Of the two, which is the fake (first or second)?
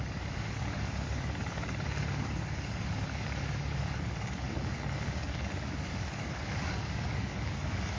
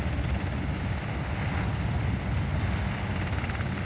first